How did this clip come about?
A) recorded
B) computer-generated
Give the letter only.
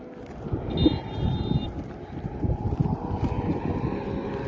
A